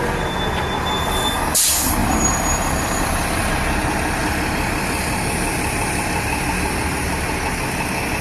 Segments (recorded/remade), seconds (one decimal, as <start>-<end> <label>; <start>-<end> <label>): 0.0-2.0 recorded; 2.0-3.5 remade; 3.5-4.2 recorded; 4.2-7.1 remade; 7.1-8.2 recorded